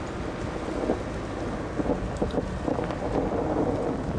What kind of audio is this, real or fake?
real